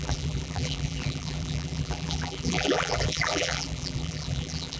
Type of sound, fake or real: fake